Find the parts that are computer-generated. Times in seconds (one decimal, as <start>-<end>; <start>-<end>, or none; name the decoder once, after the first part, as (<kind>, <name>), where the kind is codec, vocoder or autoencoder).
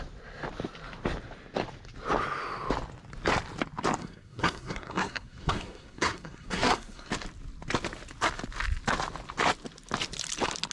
4.0-7.1 (codec, SNAC)